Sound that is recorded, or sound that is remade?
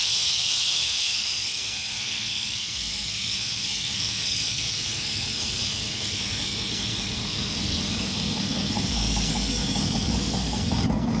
remade